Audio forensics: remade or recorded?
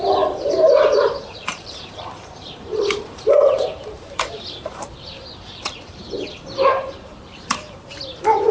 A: remade